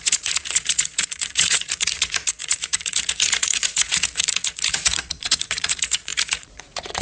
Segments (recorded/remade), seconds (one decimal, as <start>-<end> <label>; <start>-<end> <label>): 0.0-7.0 remade